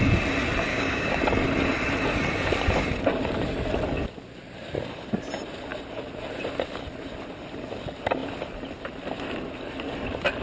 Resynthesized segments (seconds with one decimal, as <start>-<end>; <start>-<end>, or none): 0.7-1.2